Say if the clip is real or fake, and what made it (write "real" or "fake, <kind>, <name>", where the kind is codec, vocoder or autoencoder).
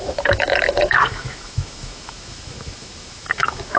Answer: fake, autoencoder, DAC-VAE